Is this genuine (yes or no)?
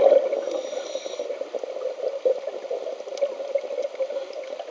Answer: yes